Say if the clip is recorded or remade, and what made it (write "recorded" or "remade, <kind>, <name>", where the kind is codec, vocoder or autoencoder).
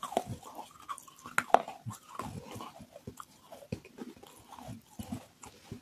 recorded